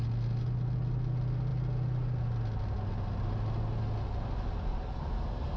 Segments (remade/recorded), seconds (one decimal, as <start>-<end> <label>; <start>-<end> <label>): 0.0-5.6 recorded